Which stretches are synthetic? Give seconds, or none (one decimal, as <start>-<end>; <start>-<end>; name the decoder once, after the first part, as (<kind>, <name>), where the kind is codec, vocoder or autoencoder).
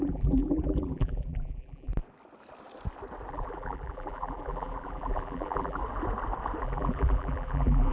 0.0-1.9 (vocoder, BigVGAN v2); 3.3-5.8; 6.6-7.9